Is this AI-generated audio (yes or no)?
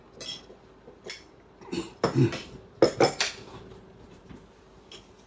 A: no